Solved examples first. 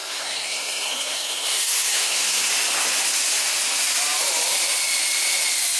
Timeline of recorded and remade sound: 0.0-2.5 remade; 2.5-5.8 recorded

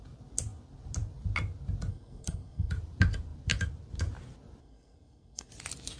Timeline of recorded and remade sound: 0.0-1.9 recorded; 1.9-2.7 remade; 2.7-4.6 recorded; 4.6-5.5 remade; 5.5-6.0 recorded

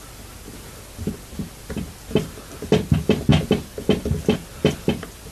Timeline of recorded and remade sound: 0.0-3.3 remade; 3.3-4.1 recorded; 4.1-5.3 remade